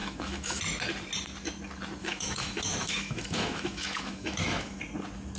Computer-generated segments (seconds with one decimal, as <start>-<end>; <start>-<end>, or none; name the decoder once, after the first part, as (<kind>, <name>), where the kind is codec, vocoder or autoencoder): 0.0-0.6 (autoencoder, DAC-VAE); 2.0-4.8